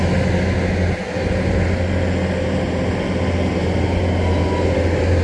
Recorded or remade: recorded